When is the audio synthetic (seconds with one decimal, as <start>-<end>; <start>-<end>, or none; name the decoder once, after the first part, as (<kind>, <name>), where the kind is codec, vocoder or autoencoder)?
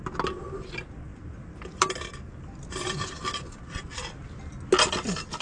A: none